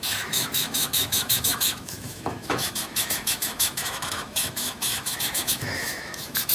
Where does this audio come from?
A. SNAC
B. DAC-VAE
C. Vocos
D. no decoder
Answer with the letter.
B